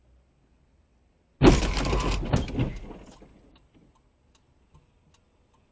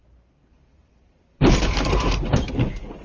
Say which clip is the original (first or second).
first